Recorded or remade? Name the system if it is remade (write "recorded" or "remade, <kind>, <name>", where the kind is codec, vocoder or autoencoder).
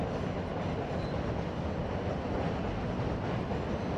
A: recorded